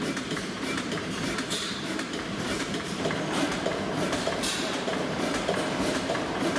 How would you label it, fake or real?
fake